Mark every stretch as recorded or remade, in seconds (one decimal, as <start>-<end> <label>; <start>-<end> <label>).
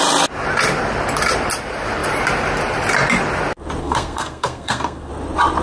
0.0-3.8 recorded; 3.8-5.1 remade; 5.1-5.6 recorded